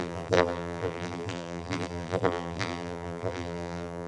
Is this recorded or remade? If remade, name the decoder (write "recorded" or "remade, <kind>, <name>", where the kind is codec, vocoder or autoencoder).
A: remade, vocoder, BigVGAN v2